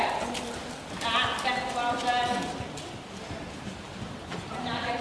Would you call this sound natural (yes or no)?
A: yes